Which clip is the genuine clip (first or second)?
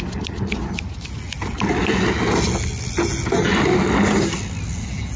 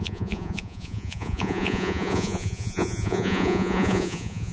first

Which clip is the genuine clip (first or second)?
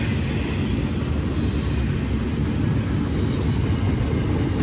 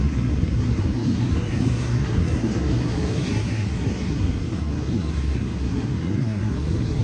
first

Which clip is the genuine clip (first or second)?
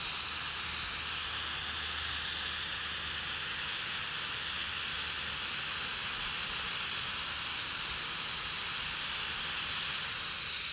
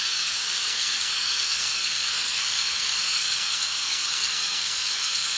first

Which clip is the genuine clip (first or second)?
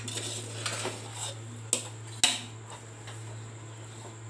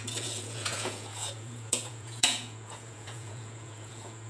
first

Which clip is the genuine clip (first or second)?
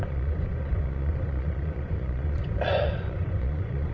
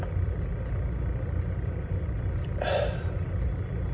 second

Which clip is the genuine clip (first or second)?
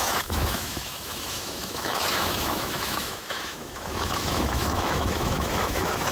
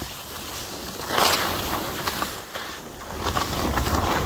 second